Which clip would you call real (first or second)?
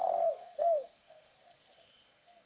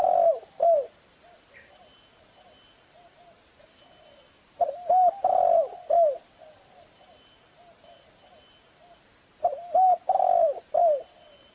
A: second